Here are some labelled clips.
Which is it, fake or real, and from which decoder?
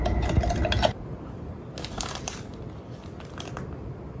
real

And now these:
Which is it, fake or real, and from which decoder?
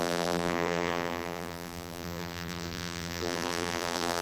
fake, vocoder, BigVGAN v2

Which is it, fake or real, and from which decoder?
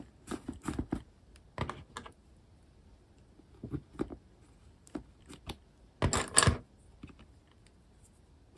real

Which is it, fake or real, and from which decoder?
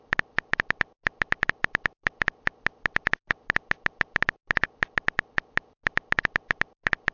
real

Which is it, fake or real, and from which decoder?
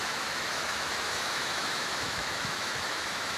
fake, autoencoder, DAC-VAE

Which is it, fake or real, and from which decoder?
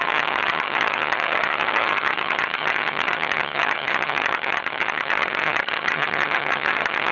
fake, vocoder, HiFi-GAN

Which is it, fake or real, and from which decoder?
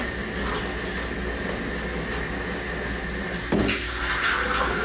real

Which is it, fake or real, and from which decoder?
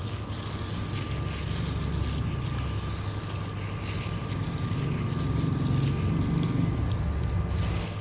real